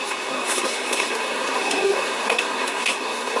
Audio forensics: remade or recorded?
remade